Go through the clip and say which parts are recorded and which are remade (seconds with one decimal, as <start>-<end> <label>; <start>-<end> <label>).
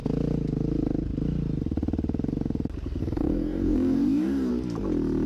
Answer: 0.0-3.0 recorded; 3.0-4.5 remade; 4.5-5.3 recorded